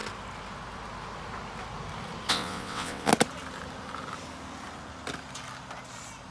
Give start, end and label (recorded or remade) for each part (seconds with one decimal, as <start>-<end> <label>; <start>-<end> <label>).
0.0-2.3 recorded; 2.3-3.1 remade; 3.1-6.3 recorded

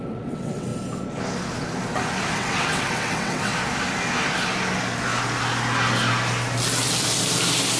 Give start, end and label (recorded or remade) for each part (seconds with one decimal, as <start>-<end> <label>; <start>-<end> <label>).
0.0-0.7 remade; 0.7-2.3 recorded; 2.3-3.5 remade; 3.5-7.8 recorded

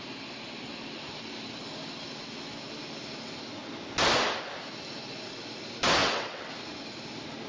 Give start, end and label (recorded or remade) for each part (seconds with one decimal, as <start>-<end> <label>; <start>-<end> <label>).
0.0-6.0 recorded; 6.0-6.5 remade; 6.5-7.5 recorded

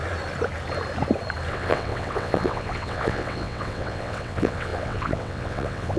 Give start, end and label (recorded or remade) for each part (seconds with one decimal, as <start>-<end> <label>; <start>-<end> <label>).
0.0-1.5 recorded; 1.5-6.0 remade

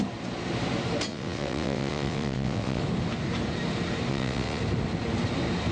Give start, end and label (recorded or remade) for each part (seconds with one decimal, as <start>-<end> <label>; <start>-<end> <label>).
0.0-1.1 recorded; 1.1-2.8 remade; 2.8-4.1 recorded; 4.1-4.6 remade; 4.6-5.7 recorded